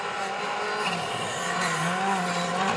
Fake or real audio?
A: real